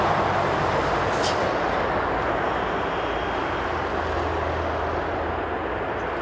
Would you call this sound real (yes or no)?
yes